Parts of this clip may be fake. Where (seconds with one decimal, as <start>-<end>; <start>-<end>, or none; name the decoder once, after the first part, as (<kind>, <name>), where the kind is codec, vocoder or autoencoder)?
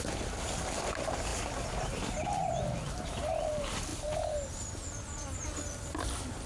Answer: none